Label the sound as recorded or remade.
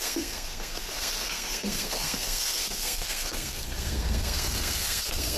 remade